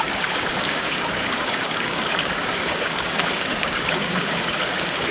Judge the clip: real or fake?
fake